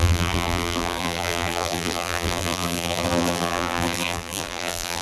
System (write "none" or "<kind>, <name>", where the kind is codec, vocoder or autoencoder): vocoder, BigVGAN v2